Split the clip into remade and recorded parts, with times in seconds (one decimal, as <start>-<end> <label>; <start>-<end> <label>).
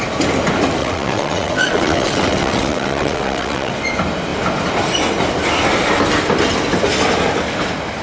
0.0-0.8 recorded; 0.8-3.7 remade; 3.7-8.0 recorded